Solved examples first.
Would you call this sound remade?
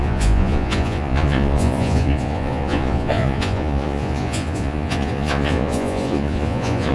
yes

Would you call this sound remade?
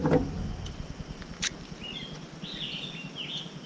no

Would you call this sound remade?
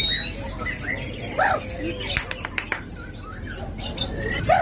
no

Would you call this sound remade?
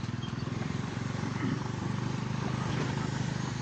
yes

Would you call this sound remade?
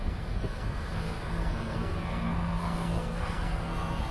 yes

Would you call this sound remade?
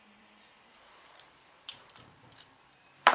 yes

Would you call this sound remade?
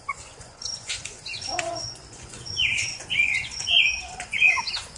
yes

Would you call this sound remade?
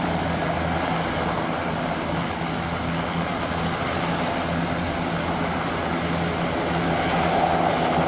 no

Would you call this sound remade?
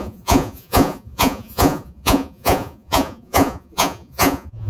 yes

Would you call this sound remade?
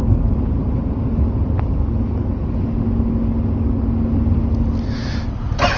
no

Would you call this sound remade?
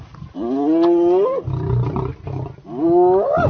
no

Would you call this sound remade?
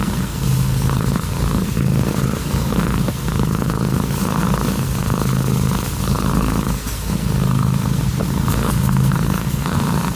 yes